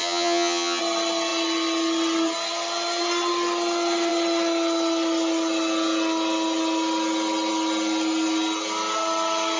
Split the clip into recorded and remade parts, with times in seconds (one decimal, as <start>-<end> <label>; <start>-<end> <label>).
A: 0.0-0.8 remade; 0.8-9.6 recorded